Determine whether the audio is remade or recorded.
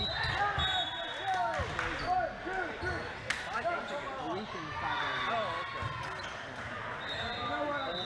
recorded